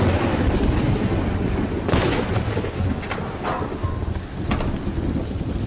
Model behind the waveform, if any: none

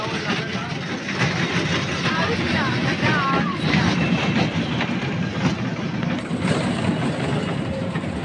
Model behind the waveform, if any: none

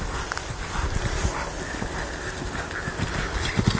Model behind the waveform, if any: none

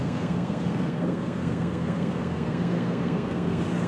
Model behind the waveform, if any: codec, SNAC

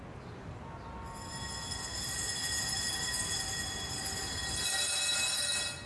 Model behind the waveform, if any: none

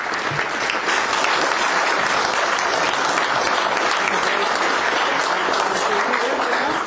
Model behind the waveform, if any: none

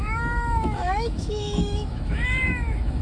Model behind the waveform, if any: autoencoder, DAC-VAE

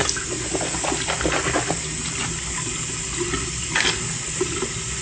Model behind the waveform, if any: none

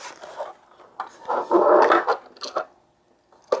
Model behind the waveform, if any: none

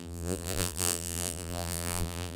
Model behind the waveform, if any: vocoder, BigVGAN v2